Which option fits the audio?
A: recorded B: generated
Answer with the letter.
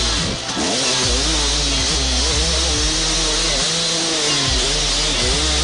A